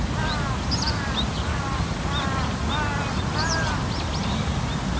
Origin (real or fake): real